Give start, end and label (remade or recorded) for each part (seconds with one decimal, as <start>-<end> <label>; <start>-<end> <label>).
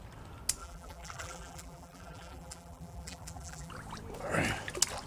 0.0-0.6 recorded; 0.6-3.7 remade; 3.7-5.1 recorded